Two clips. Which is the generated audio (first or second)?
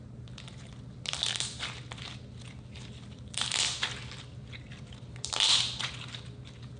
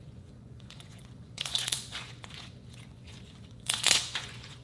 second